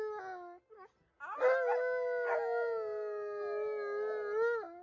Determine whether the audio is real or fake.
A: real